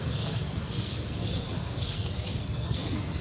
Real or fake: fake